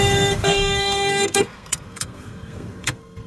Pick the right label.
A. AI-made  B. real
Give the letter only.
A